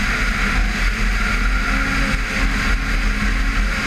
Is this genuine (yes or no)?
yes